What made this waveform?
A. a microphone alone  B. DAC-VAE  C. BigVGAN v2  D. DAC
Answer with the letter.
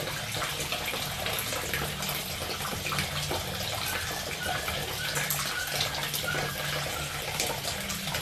A